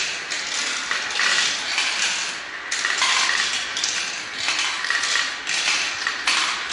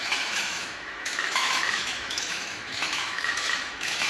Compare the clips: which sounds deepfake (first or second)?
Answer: second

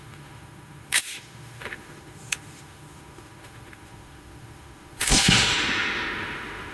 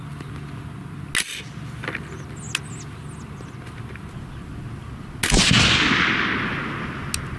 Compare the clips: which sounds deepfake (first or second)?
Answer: first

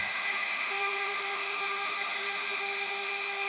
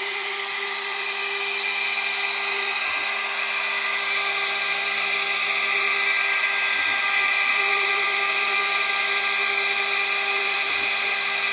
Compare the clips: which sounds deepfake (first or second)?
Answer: first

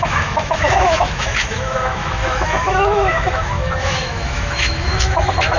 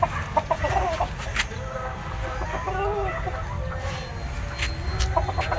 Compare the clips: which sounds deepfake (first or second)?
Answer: first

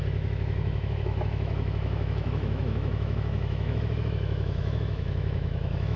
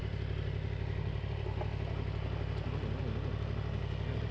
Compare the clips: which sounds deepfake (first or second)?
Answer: first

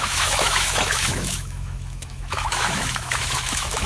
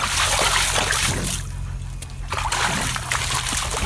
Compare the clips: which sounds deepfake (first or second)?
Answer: first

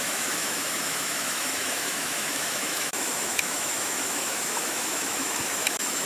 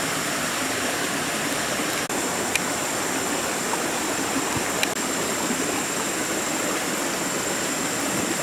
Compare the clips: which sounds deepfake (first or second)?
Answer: first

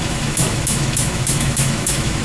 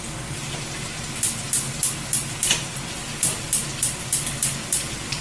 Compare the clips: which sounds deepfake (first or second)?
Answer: first